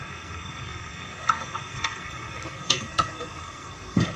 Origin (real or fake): fake